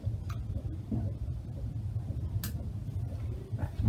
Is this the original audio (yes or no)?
yes